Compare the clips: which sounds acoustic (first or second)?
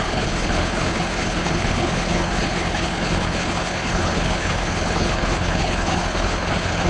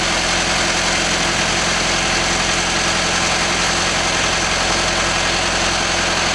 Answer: second